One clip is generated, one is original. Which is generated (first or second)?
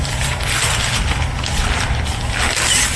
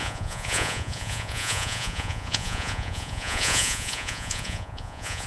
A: second